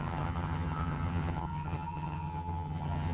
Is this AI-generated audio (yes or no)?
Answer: yes